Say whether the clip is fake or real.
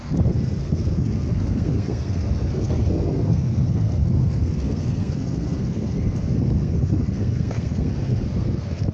fake